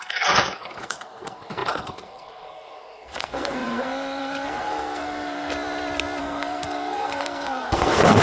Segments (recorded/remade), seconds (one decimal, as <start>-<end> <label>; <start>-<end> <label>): 0.0-5.5 remade; 5.5-6.2 recorded; 6.2-8.2 remade